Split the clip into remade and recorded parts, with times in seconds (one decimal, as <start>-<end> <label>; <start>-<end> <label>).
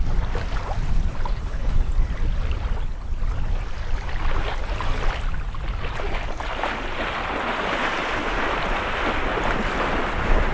0.0-1.3 recorded; 1.3-1.9 remade; 1.9-10.5 recorded